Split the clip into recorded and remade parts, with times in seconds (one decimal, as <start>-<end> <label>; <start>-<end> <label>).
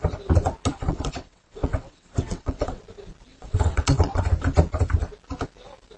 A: 0.0-0.7 recorded; 0.7-2.8 remade; 2.8-3.3 recorded; 3.3-4.2 remade; 4.2-6.0 recorded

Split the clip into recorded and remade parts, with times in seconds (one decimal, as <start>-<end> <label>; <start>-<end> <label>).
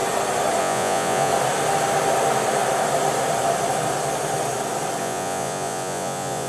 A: 0.0-0.6 recorded; 0.6-1.3 remade; 1.3-5.0 recorded; 5.0-6.5 remade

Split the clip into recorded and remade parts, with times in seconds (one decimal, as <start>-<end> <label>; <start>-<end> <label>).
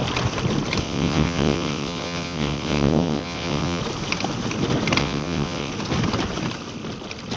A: 0.0-0.8 recorded; 0.8-3.8 remade; 3.8-5.0 recorded; 5.0-5.7 remade; 5.7-7.4 recorded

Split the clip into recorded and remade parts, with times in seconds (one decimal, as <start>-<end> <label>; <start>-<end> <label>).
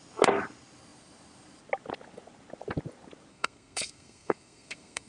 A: 0.0-3.3 recorded; 3.3-5.1 remade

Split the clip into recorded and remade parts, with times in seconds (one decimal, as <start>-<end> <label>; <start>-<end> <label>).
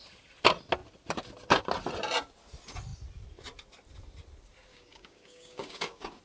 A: 0.0-4.7 recorded; 4.7-6.2 remade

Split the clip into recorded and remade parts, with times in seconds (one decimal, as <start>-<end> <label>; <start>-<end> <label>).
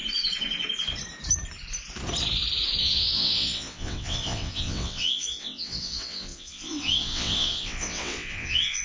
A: 0.0-2.8 recorded; 2.8-8.8 remade